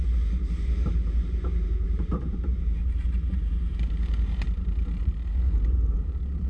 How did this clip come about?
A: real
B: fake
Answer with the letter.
B